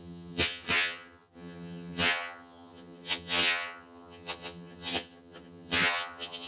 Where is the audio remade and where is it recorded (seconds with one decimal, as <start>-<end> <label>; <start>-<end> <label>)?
0.0-6.5 remade